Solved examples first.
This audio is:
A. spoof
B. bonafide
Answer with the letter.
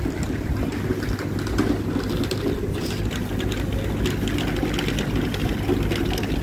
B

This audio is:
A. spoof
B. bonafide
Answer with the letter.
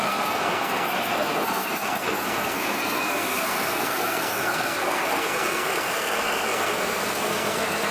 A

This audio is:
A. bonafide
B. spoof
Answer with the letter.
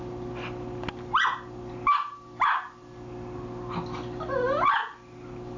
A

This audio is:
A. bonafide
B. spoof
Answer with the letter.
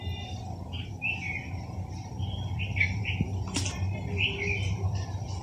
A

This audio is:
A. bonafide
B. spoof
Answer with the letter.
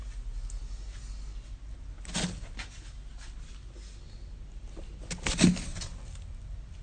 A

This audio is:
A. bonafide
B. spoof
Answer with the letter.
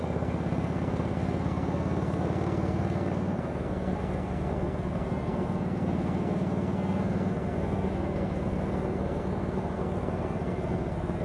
B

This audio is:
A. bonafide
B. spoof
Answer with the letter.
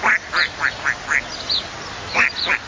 A